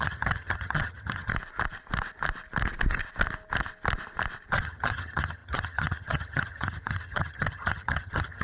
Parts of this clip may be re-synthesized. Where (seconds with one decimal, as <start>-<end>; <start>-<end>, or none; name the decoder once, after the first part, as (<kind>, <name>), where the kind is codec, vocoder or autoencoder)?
0.0-1.3 (vocoder, HiFi-GAN); 4.5-8.4